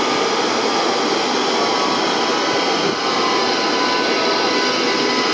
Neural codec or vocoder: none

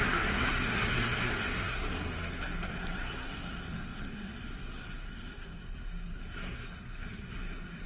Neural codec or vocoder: codec, SNAC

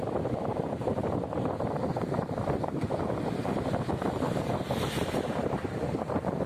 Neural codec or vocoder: vocoder, BigVGAN v2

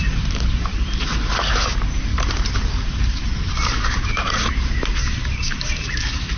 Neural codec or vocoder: vocoder, BigVGAN v2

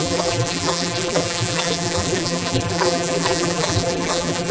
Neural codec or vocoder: vocoder, BigVGAN v2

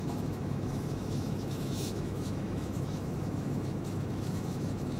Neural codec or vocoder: autoencoder, DAC-VAE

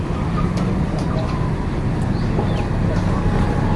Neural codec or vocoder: none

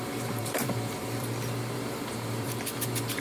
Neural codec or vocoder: vocoder, BigVGAN v2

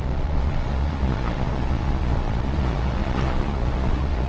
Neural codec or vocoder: vocoder, Vocos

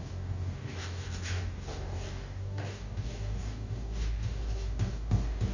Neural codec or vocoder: codec, DAC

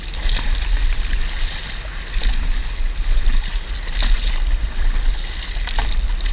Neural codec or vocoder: none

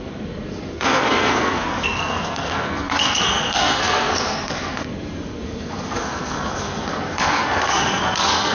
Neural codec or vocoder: codec, SNAC